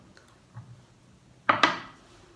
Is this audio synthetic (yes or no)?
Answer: no